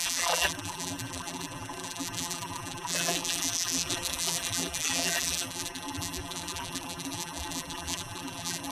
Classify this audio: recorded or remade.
remade